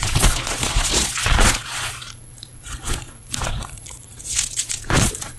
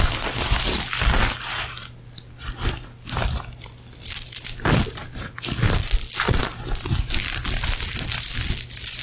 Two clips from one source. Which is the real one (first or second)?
second